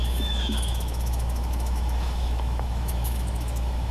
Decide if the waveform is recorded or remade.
remade